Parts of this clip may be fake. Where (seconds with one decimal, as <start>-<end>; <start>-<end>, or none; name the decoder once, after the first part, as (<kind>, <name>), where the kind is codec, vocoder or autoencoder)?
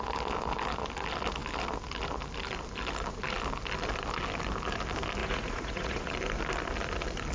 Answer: 5.2-6.1 (vocoder, Vocos)